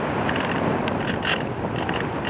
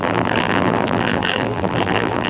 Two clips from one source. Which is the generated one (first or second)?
second